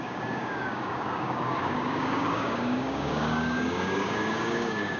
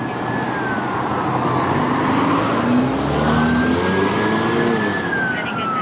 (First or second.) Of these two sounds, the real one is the second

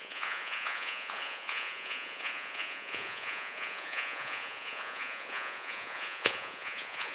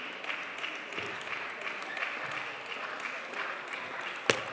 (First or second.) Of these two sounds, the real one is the second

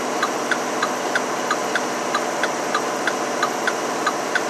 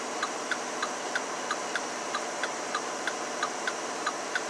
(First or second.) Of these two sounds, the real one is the first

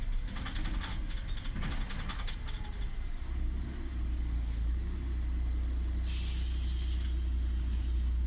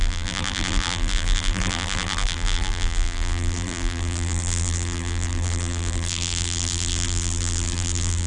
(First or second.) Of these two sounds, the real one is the first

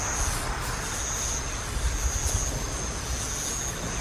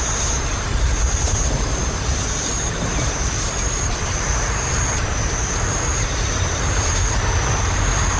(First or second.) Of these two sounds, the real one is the first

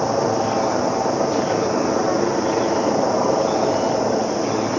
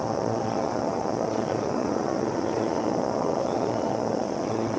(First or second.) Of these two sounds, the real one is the first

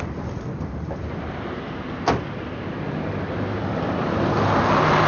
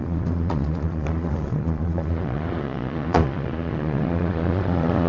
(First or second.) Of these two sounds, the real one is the first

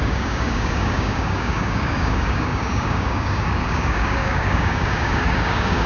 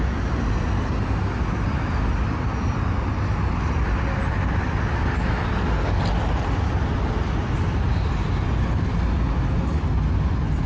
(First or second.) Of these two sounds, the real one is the second